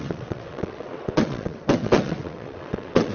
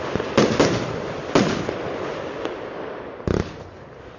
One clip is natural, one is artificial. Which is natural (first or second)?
second